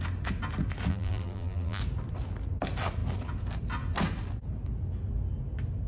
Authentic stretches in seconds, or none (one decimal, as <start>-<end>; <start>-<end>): 0.0-0.9; 1.8-5.9